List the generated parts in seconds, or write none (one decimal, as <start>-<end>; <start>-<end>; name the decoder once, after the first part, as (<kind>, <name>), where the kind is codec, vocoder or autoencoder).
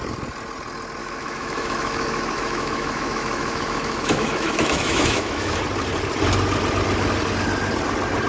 1.0-5.6 (autoencoder, DAC-VAE)